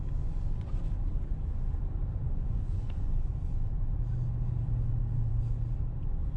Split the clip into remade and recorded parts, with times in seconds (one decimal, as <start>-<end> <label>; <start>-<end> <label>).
0.0-2.2 recorded; 2.2-3.3 remade; 3.3-6.4 recorded